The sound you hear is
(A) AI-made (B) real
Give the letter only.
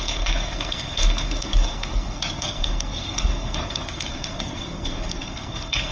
A